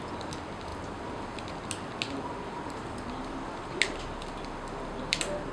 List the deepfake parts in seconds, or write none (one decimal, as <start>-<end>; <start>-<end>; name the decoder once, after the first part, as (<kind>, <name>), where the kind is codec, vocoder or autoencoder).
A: none